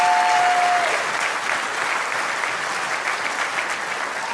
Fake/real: real